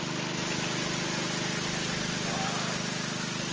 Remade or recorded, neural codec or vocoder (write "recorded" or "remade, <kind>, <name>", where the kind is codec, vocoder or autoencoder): recorded